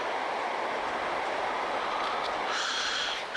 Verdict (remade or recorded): recorded